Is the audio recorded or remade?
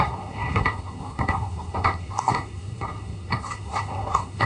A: remade